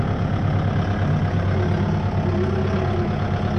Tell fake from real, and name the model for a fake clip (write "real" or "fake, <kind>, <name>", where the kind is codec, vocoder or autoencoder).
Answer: real